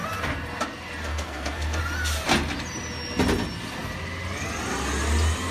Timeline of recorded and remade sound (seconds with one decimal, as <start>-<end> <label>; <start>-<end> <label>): 0.0-1.1 recorded; 1.1-1.8 remade; 1.8-5.5 recorded